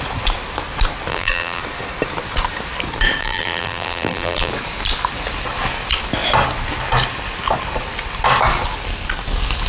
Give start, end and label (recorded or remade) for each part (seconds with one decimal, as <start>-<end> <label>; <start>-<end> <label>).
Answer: 0.0-1.1 recorded; 1.1-1.6 remade; 1.6-3.2 recorded; 3.2-4.5 remade; 4.5-9.7 recorded